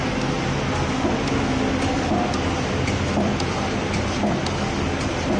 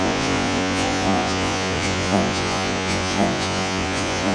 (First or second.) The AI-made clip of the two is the second